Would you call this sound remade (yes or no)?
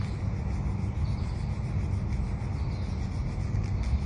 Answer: no